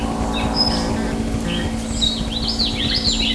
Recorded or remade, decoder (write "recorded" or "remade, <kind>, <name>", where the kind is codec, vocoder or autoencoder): recorded